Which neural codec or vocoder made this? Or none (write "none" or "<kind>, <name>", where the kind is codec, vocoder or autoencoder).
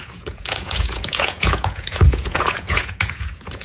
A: vocoder, Vocos